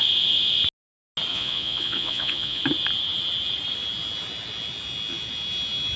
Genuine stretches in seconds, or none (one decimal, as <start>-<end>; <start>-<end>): 0.0-1.3; 2.6-6.0